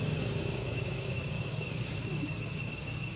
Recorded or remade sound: remade